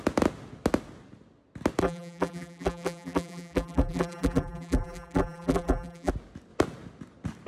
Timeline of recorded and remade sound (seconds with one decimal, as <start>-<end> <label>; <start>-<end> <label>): 0.0-1.8 recorded; 1.8-6.1 remade; 6.1-7.5 recorded